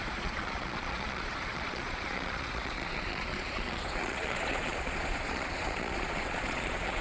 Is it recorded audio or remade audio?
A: remade